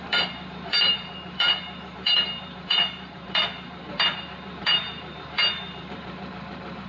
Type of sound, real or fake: fake